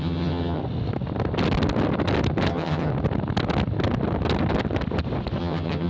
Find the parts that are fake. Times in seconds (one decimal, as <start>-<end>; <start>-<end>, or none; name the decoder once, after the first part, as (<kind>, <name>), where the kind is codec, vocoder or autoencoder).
0.0-0.6 (vocoder, HiFi-GAN); 2.5-2.9; 5.4-5.9